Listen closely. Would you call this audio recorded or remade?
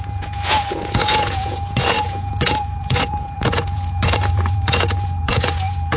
remade